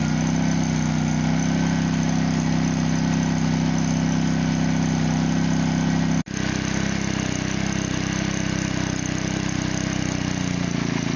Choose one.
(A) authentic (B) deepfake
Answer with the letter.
A